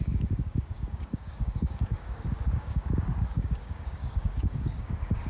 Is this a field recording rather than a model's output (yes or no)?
no